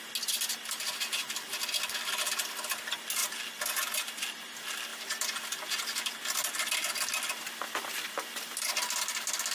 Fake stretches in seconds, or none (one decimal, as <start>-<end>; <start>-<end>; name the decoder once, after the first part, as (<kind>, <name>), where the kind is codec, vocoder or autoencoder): none